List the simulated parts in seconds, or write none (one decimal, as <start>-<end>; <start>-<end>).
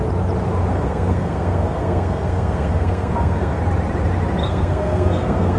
0.7-3.6; 4.4-5.6